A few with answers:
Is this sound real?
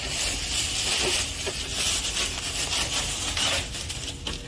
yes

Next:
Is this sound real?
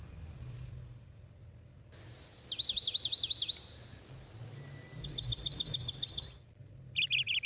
yes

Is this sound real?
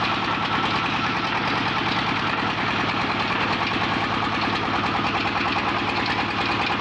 yes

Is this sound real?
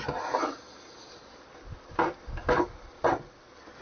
yes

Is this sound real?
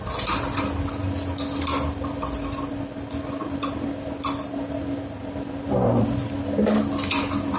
yes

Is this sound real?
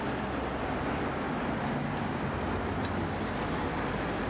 yes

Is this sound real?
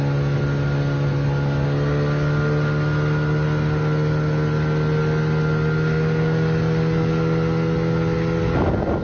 yes